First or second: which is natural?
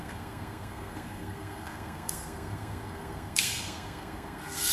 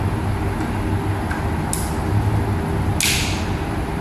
second